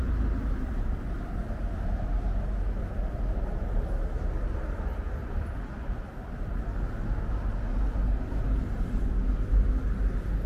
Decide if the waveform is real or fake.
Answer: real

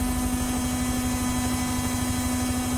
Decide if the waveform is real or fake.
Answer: real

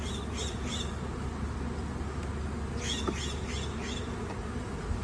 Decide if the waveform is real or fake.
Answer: real